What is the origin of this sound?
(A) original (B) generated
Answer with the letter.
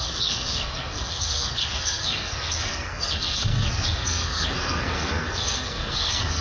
B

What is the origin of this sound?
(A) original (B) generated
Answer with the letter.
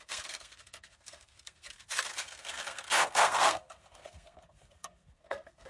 B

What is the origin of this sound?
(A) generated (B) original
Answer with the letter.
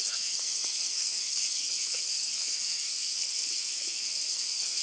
A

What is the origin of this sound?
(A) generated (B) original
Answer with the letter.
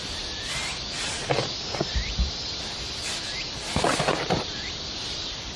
B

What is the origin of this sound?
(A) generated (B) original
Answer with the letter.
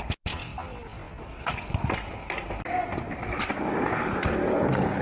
B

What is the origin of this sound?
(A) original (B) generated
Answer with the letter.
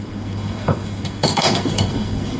B